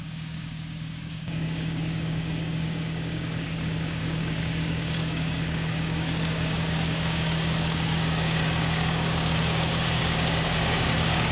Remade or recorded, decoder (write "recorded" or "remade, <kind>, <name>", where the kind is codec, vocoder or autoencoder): remade, codec, DAC